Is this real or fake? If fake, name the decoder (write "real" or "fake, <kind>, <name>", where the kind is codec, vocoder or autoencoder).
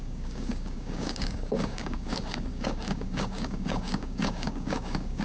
fake, codec, DAC